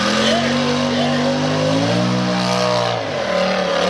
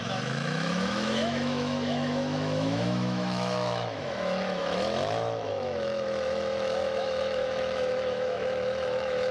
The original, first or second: first